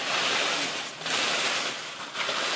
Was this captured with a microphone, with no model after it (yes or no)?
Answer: yes